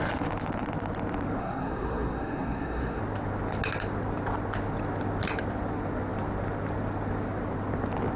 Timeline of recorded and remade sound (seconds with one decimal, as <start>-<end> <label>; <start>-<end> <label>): 0.0-1.4 recorded; 1.4-3.0 remade; 3.0-8.2 recorded